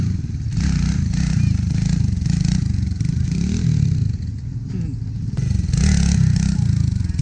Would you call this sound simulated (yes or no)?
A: no